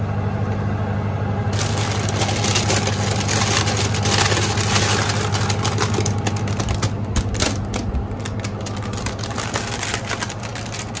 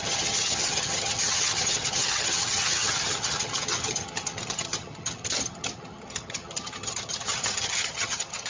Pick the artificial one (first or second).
second